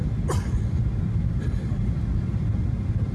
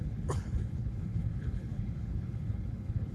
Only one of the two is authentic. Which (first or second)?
first